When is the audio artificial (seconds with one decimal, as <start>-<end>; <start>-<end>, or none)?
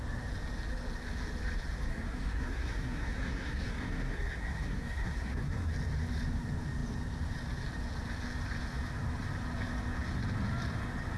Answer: 1.9-5.7